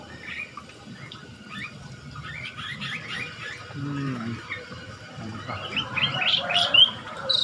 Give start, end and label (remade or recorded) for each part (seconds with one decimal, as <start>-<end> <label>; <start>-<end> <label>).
0.0-1.2 recorded; 1.2-1.9 remade; 1.9-2.7 recorded; 2.7-7.4 remade